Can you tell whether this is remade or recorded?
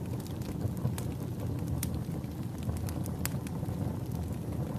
recorded